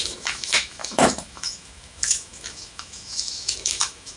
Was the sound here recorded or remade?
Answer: remade